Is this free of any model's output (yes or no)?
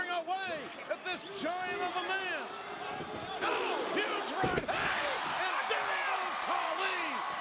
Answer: yes